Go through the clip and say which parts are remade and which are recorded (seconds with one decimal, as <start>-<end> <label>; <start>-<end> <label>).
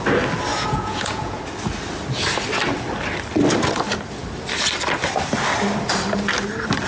0.0-0.5 recorded; 0.5-1.4 remade; 1.4-6.9 recorded